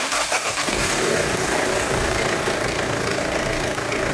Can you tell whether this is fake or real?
fake